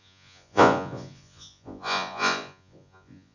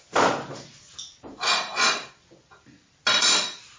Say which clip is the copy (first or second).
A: first